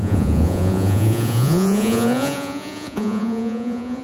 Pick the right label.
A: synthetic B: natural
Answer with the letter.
A